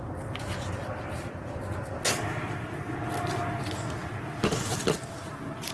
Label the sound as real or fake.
real